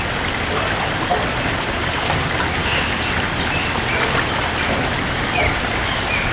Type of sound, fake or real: real